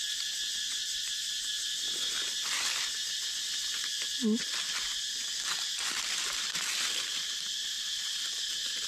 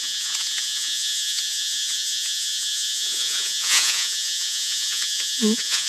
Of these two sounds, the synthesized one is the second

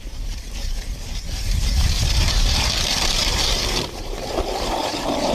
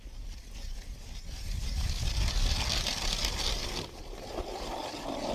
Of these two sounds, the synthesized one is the first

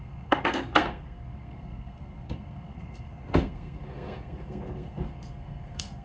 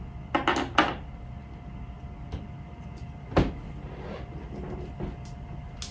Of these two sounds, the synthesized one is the first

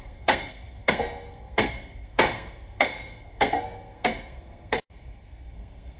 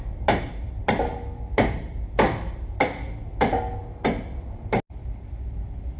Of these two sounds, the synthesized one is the first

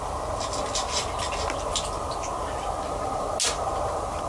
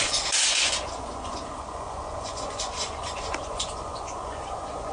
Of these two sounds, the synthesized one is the second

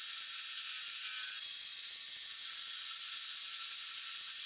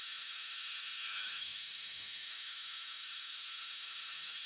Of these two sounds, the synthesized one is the second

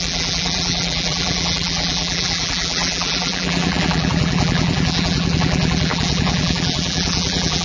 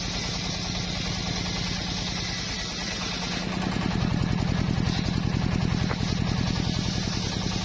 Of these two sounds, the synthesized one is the first